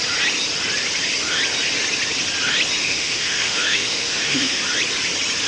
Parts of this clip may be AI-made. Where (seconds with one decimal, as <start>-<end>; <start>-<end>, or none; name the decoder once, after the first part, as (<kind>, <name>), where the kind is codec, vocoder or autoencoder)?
2.8-4.6 (autoencoder, DAC-VAE)